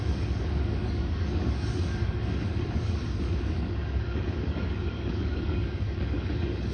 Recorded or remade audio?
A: remade